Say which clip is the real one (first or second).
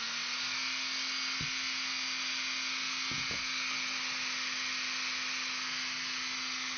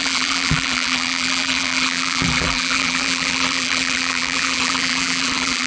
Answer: first